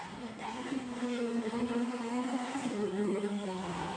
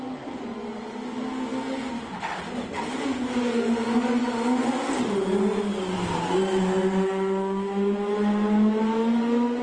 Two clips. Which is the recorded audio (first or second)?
second